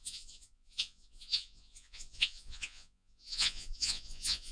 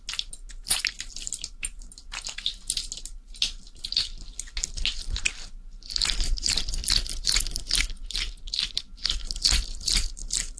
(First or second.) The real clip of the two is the second